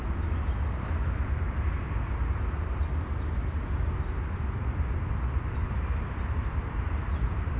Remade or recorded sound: recorded